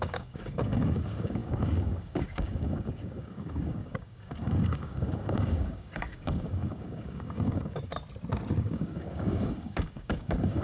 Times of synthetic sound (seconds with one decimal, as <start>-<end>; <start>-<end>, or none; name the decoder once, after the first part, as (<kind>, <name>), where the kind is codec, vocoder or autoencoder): 0.0-7.9 (codec, DAC); 8.6-10.6